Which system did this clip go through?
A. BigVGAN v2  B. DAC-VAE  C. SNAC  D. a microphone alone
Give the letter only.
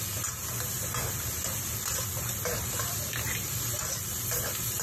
D